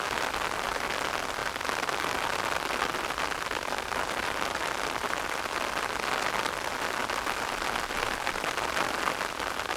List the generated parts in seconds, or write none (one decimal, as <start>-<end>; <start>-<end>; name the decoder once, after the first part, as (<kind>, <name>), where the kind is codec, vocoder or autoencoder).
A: none